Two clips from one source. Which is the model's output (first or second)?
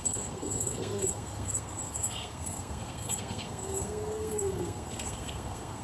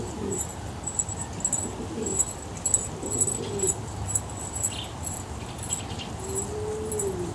first